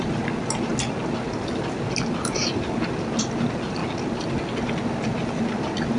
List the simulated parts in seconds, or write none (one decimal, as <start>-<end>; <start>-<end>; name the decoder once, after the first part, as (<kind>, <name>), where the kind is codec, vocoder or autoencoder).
none